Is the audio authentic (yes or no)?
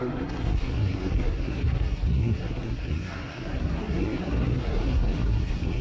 no